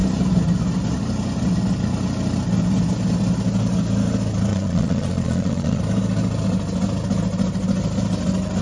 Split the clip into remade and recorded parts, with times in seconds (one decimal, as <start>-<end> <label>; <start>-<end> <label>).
0.0-4.5 recorded; 4.5-5.8 remade; 5.8-8.6 recorded